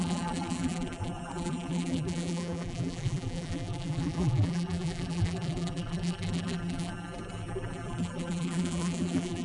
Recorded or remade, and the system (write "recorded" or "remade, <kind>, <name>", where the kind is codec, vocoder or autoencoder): remade, vocoder, BigVGAN v2